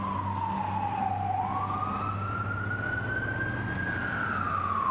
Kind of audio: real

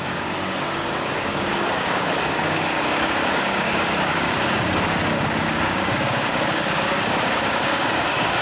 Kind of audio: fake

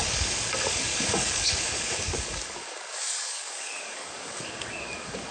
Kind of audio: fake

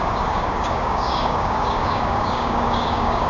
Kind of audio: fake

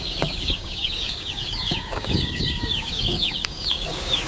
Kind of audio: fake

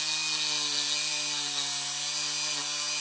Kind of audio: real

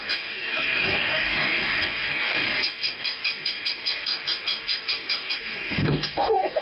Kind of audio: fake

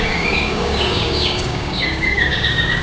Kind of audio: fake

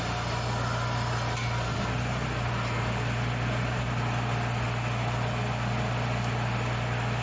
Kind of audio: real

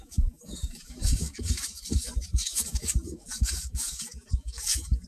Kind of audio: fake